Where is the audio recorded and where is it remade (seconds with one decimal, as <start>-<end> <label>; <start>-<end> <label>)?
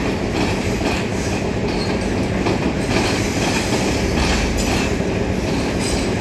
0.0-6.2 recorded